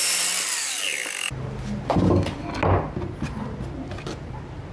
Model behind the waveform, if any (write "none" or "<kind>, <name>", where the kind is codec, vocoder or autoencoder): none